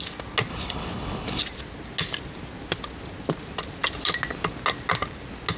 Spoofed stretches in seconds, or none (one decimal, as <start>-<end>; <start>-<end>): 0.5-1.4